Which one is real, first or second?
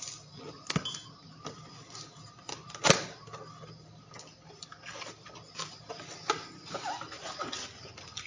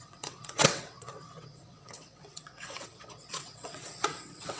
first